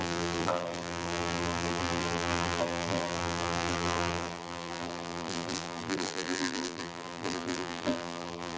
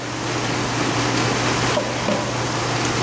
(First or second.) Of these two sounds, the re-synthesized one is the first